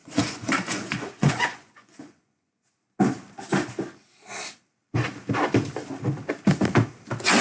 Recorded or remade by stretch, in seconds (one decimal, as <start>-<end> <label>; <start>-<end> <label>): 0.0-2.7 remade; 2.7-7.4 recorded